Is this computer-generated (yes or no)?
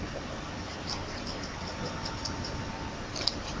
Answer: no